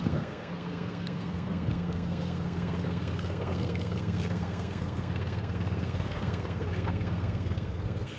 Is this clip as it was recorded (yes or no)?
no